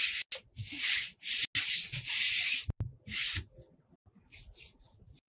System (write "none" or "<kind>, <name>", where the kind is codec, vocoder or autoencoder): none